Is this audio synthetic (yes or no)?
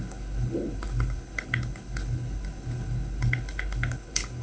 yes